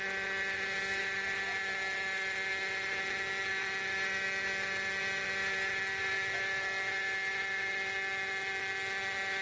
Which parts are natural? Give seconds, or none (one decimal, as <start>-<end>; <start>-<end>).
0.0-9.4